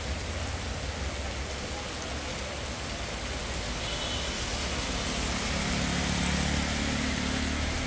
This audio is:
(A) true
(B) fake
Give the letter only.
A